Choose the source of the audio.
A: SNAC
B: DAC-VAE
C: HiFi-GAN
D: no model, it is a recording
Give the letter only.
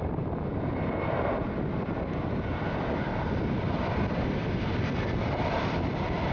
D